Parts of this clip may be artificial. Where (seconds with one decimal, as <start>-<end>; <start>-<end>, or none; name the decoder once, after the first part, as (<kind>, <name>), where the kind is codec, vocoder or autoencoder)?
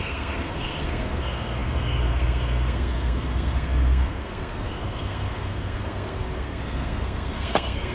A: 0.0-7.9 (codec, SNAC)